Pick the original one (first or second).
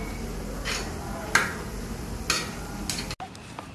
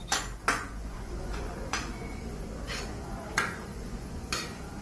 first